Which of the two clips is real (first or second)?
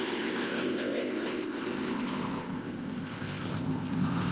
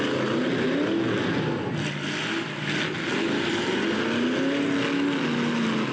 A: second